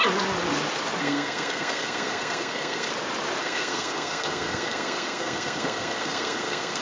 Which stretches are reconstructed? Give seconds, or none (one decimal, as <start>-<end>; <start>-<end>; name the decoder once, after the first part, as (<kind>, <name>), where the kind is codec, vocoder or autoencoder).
1.0-2.9 (codec, SNAC); 3.4-6.8